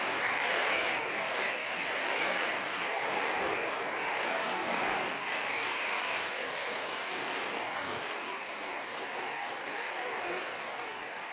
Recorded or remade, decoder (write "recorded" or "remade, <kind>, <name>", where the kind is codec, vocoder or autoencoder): remade, codec, DAC